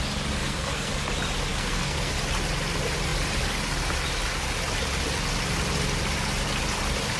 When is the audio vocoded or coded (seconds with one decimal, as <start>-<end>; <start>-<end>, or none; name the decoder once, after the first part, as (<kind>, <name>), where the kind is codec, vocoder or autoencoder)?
0.4-0.9 (codec, SNAC); 1.5-2.1